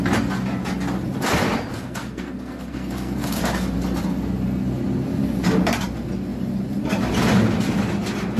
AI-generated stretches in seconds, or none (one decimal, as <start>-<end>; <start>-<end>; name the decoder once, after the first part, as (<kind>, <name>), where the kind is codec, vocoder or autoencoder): 1.7-3.4 (codec, SNAC)